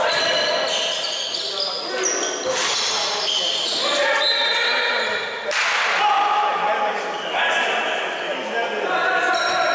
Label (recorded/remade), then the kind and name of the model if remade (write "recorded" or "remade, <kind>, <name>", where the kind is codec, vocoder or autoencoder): recorded